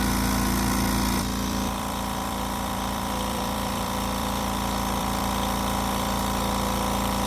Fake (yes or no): yes